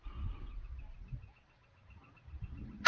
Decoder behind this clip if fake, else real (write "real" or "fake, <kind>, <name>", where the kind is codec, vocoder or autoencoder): real